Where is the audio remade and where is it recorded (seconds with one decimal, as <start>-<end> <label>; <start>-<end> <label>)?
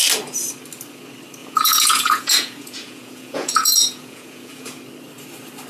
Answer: 0.0-1.4 recorded; 1.4-4.8 remade; 4.8-5.7 recorded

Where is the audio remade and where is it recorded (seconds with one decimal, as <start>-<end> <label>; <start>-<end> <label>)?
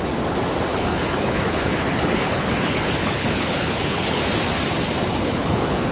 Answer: 0.0-0.7 recorded; 0.7-4.2 remade; 4.2-5.1 recorded; 5.1-5.9 remade